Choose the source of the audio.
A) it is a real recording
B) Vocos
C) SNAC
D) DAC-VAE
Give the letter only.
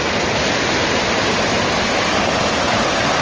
A